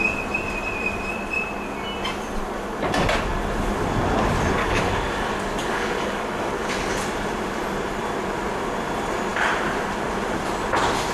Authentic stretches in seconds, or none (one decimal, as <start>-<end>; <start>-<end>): 0.0-4.6; 6.9-11.1